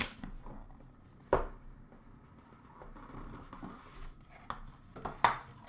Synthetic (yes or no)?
no